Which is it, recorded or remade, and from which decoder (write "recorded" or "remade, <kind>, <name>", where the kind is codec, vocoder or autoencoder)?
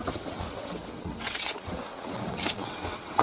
remade, vocoder, WaveNeXt